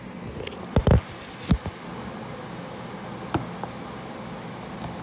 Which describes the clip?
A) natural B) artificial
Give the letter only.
A